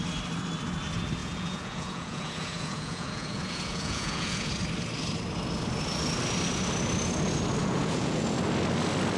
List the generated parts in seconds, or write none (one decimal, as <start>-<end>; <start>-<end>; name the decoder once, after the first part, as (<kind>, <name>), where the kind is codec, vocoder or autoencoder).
1.2-4.5 (vocoder, Vocos); 7.6-8.2